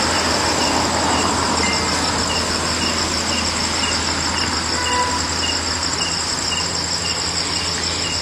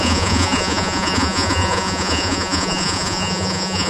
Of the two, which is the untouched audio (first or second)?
first